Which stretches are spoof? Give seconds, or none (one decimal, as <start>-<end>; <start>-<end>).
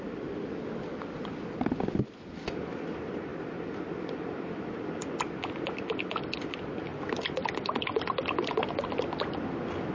0.0-9.9